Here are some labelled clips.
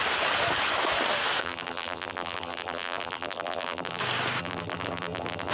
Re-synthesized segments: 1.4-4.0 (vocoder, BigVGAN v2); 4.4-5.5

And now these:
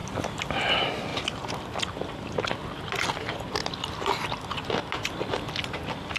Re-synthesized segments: none

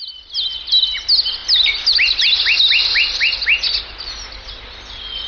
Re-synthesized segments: none

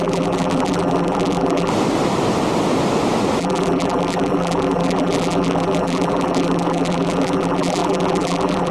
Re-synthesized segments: 0.0-1.7 (vocoder, BigVGAN v2); 3.4-8.7